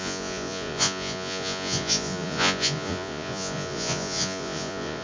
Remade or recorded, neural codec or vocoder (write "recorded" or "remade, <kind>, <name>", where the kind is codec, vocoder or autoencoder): remade, vocoder, Vocos